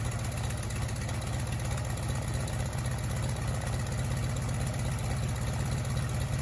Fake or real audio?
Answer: real